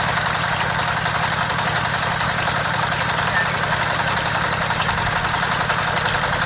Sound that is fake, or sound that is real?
real